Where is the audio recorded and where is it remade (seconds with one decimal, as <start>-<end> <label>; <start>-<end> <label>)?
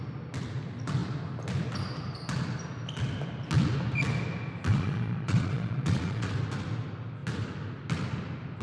0.0-4.7 recorded; 4.7-6.3 remade; 6.3-8.6 recorded